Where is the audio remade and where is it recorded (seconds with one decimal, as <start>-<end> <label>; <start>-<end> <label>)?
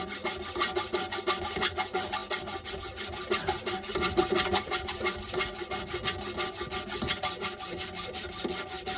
0.0-9.0 recorded